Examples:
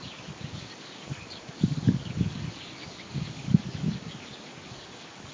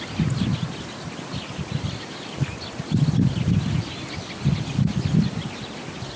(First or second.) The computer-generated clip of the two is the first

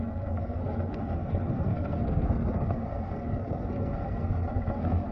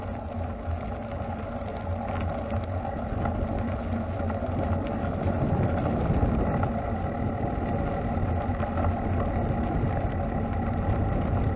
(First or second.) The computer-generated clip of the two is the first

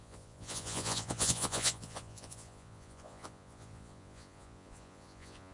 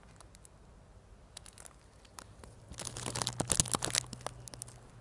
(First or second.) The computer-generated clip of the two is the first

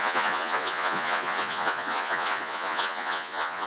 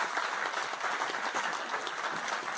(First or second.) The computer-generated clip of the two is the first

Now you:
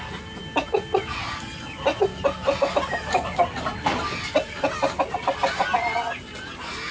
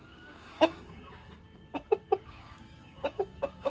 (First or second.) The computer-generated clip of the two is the second